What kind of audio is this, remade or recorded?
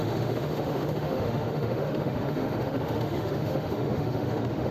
remade